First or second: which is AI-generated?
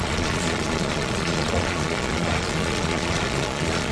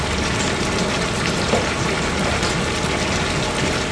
first